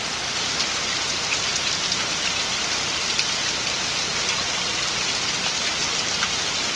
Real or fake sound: real